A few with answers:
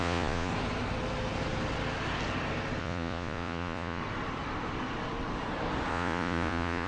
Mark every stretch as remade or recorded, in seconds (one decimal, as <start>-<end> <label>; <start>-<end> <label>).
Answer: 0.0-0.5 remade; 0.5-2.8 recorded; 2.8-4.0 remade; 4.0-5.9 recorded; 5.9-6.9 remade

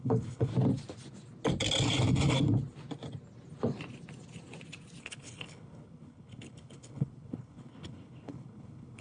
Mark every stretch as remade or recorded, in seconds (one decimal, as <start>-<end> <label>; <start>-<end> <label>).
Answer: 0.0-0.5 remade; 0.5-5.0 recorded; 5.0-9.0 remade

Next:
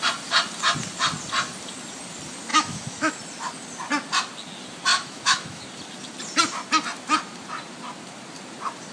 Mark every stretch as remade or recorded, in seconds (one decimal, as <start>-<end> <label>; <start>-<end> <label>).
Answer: 0.0-2.5 recorded; 2.5-3.1 remade; 3.1-4.9 recorded; 4.9-5.6 remade; 5.6-8.9 recorded